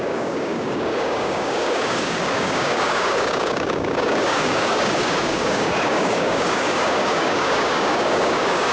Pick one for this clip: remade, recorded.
remade